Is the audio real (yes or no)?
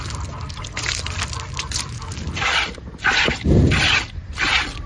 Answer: yes